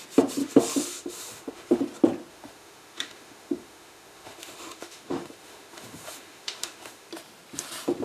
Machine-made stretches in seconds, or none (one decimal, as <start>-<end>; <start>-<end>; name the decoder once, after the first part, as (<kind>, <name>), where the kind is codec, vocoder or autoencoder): 0.4-1.8 (autoencoder, DAC-VAE); 2.3-7.1